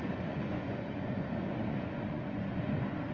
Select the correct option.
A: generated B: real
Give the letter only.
A